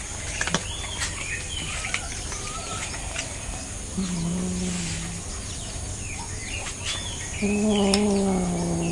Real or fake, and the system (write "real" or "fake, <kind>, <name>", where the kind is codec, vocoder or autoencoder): real